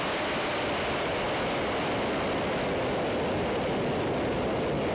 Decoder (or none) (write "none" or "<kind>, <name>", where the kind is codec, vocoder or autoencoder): none